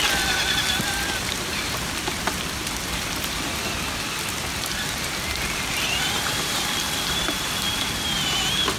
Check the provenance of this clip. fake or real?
fake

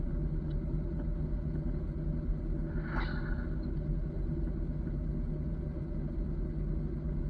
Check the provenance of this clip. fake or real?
real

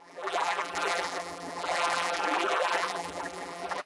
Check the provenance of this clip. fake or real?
fake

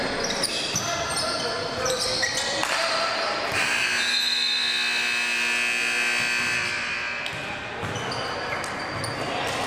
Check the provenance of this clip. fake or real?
real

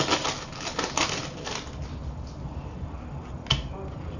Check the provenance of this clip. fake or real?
real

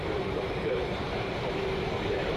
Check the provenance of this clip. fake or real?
fake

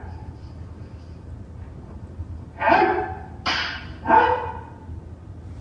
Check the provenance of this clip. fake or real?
real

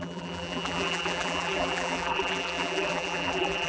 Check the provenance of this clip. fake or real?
fake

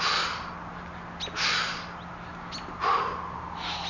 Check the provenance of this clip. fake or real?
real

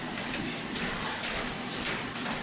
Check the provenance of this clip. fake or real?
fake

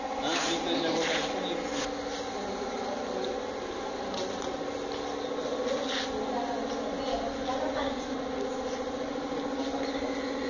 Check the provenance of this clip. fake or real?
real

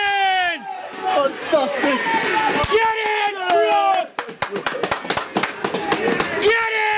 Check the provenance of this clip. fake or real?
real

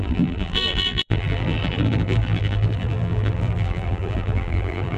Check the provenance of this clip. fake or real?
fake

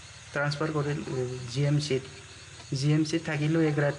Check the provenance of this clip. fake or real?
real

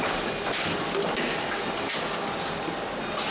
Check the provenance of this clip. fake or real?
real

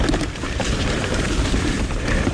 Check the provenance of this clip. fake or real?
fake